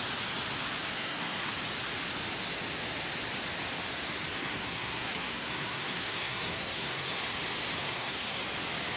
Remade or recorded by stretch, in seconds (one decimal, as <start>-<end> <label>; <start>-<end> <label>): 0.0-0.9 recorded; 0.9-1.5 remade; 1.5-4.3 recorded; 4.3-7.2 remade; 7.2-7.8 recorded; 7.8-8.4 remade; 8.4-9.0 recorded